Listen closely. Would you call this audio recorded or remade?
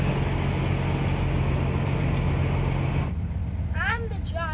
recorded